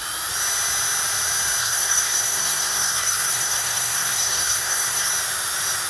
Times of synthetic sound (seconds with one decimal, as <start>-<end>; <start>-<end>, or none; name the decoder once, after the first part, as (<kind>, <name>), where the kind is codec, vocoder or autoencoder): 1.6-5.1 (codec, SNAC)